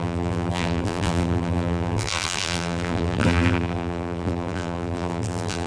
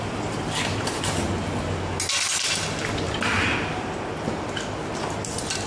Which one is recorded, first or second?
second